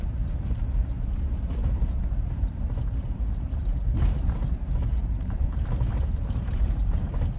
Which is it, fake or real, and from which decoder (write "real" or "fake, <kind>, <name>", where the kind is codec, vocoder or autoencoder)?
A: fake, vocoder, BigVGAN v2